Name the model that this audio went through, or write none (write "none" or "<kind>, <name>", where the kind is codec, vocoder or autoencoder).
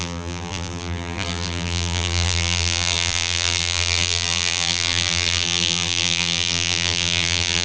vocoder, BigVGAN v2